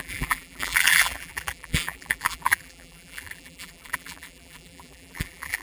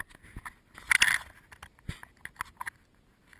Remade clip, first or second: first